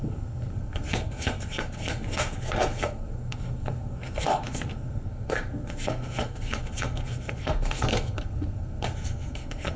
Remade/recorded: remade